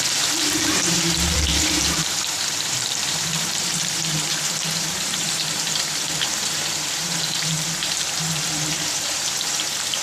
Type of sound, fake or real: fake